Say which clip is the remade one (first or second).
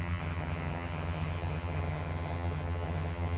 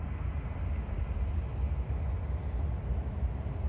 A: first